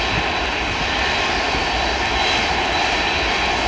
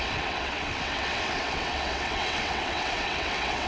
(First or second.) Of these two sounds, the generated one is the second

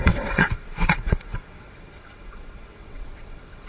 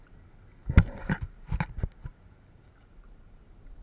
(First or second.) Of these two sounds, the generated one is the first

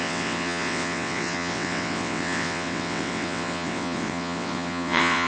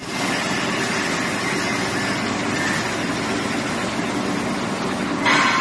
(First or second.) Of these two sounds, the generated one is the first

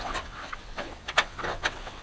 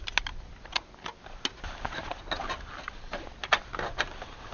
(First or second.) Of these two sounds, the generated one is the first